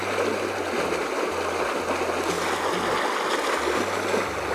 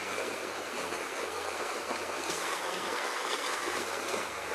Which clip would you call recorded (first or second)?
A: first